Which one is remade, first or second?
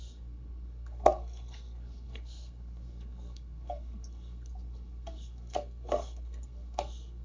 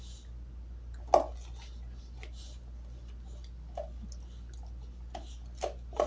first